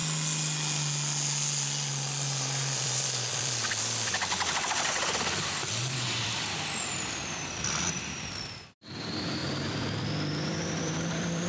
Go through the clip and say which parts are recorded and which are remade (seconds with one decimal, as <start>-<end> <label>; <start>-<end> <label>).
0.0-1.9 recorded; 1.9-11.5 remade